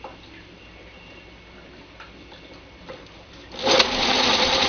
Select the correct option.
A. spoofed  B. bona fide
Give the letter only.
B